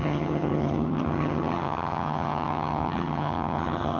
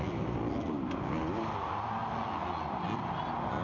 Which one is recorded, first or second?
second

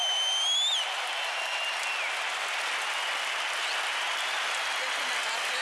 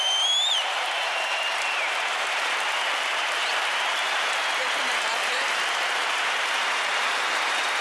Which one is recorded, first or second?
first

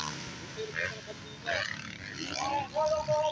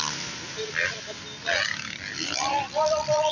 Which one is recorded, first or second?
first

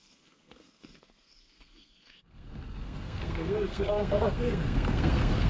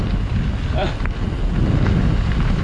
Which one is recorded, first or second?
second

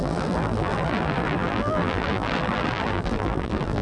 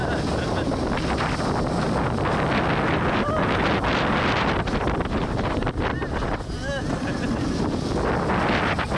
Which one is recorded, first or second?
second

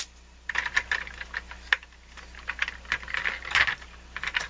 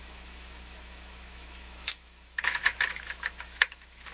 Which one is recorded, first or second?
first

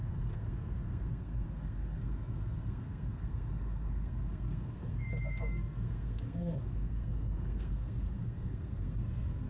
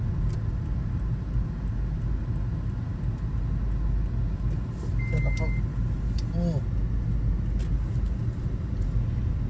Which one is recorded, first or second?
second